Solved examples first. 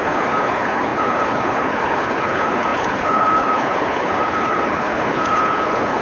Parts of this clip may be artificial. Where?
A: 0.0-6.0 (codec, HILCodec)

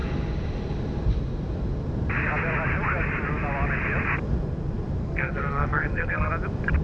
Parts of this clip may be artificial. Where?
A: 5.0-6.3 (codec, SNAC)

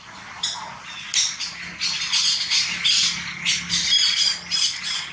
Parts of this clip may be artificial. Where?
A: none